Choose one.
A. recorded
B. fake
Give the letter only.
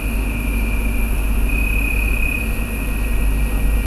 A